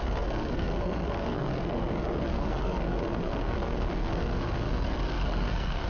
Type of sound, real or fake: fake